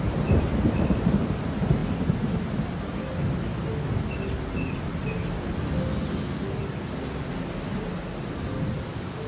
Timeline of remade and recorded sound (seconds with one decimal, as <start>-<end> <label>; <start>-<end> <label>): 0.0-9.3 recorded